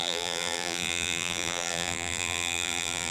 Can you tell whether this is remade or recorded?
remade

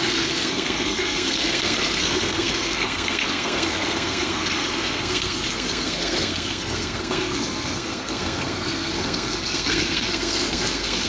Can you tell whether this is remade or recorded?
remade